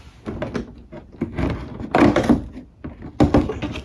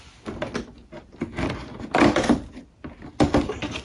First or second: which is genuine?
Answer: first